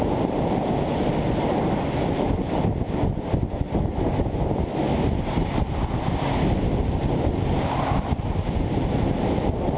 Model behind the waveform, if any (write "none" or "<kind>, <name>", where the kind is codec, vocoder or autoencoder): none